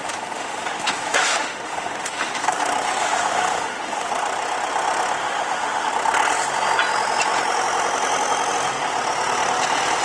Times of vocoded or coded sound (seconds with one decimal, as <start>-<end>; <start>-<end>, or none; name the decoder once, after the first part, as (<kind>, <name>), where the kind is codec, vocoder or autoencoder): 0.0-2.6 (autoencoder, DAC-VAE); 3.0-4.1; 5.2-5.9